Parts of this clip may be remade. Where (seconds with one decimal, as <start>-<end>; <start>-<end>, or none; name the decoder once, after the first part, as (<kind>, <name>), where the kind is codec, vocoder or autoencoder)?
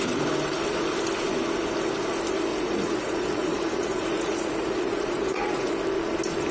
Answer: 2.5-5.7 (vocoder, Vocos)